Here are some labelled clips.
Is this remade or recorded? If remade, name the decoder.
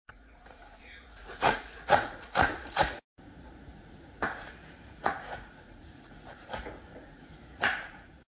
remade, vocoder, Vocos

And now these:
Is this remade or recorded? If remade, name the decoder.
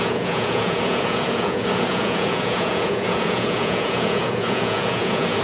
remade, vocoder, Vocos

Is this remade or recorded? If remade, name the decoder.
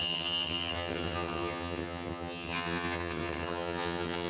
remade, vocoder, HiFi-GAN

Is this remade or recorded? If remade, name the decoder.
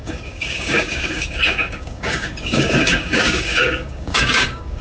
remade, codec, DAC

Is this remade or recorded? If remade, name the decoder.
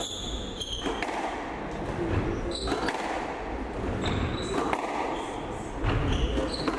recorded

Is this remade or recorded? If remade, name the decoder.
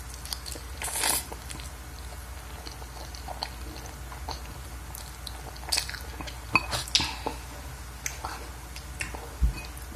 recorded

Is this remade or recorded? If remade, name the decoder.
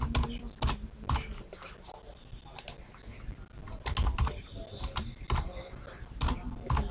recorded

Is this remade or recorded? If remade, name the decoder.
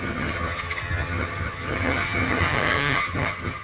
remade, vocoder, HiFi-GAN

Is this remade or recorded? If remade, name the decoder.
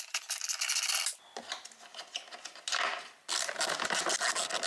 recorded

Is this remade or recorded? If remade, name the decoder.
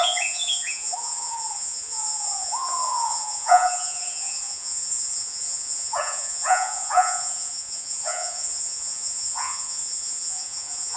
remade, vocoder, Vocos